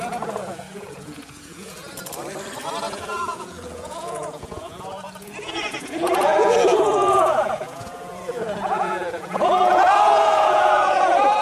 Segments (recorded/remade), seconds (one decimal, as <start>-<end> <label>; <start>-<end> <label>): 0.0-2.0 remade; 2.0-2.9 recorded; 2.9-11.4 remade